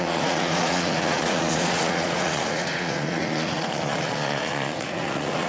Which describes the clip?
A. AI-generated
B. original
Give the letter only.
A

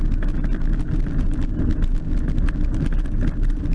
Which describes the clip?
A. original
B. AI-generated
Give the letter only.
A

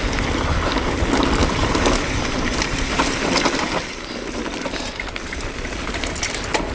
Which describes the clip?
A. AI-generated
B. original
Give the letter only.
B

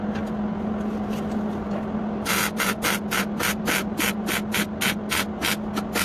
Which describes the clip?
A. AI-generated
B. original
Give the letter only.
B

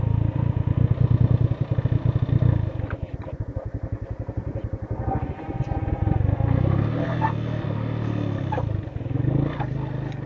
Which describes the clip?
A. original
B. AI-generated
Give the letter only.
A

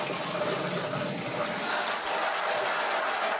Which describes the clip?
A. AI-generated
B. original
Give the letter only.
B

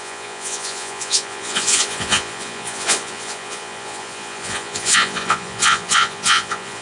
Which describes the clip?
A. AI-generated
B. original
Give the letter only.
A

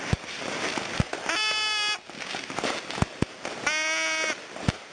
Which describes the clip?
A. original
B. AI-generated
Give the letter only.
A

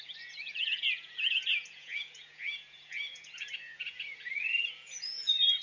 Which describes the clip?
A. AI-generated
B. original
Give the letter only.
A